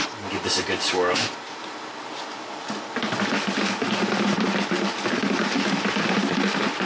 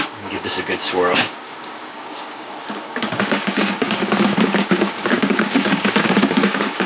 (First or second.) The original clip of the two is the first